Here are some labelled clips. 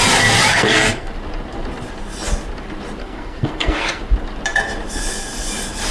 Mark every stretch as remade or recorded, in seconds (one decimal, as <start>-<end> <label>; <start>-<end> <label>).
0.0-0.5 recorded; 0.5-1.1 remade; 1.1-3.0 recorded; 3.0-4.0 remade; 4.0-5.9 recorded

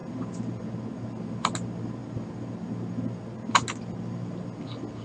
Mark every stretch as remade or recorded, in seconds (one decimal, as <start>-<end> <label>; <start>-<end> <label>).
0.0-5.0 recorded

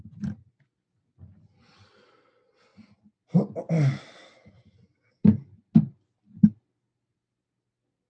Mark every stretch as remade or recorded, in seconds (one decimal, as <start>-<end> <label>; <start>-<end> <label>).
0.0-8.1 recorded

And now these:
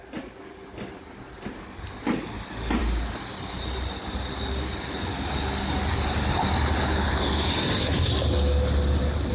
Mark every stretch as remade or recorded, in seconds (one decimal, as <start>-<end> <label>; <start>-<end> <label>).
0.0-6.8 recorded; 6.8-7.3 remade; 7.3-9.3 recorded